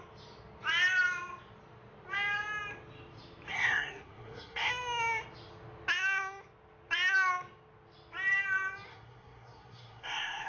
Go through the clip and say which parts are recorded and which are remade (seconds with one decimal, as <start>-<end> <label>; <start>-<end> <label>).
0.0-3.5 recorded; 3.5-4.7 remade; 4.7-8.9 recorded; 8.9-10.5 remade